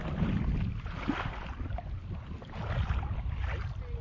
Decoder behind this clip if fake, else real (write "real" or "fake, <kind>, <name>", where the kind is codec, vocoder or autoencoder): real